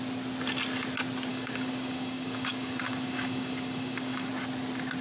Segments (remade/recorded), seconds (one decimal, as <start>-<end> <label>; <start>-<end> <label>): 0.0-1.3 recorded; 1.3-4.3 remade; 4.3-5.0 recorded